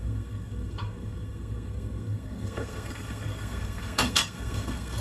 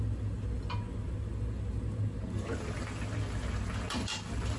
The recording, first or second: second